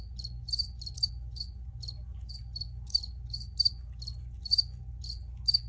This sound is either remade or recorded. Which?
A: recorded